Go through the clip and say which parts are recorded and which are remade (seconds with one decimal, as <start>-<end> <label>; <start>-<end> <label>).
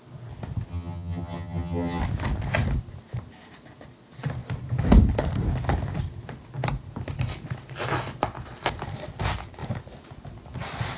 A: 0.0-0.7 recorded; 0.7-2.0 remade; 2.0-11.0 recorded